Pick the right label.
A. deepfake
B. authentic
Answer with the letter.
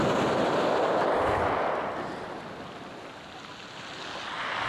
B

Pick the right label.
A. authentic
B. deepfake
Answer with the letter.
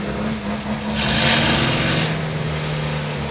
A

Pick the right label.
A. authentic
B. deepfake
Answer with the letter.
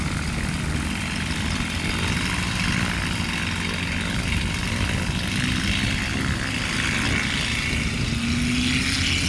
A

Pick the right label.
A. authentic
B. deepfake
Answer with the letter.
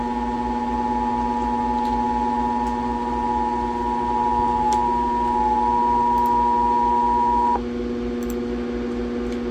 A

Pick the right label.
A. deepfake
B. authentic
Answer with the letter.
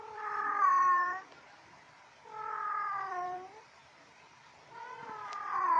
A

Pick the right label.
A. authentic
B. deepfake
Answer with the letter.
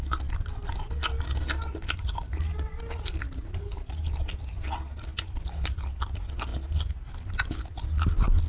A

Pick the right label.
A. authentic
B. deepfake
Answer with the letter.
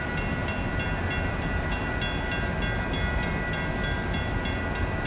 A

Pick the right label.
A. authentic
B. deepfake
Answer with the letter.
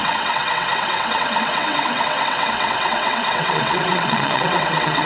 B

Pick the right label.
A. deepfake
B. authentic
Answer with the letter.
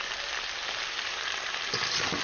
B